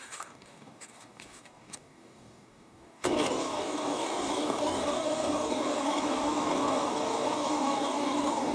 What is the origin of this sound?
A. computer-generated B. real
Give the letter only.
A